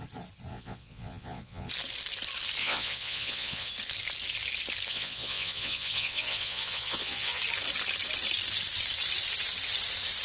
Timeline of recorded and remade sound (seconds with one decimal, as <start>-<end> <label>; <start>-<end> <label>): 0.0-0.5 recorded; 0.5-1.7 remade; 1.7-2.6 recorded; 2.6-3.7 remade; 3.7-4.9 recorded; 4.9-7.4 remade; 7.4-10.2 recorded